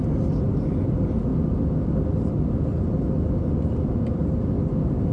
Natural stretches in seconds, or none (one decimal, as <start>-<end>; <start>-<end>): 0.0-5.1